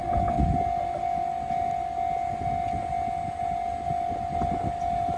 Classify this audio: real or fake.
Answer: real